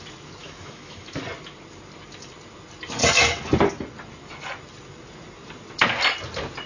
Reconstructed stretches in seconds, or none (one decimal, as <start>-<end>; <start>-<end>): 0.4-1.2